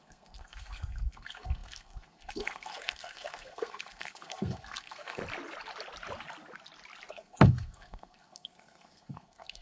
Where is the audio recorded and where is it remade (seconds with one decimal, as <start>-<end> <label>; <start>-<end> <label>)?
0.0-5.2 remade; 5.2-7.1 recorded; 7.1-9.6 remade